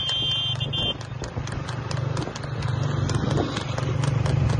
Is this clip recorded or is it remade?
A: recorded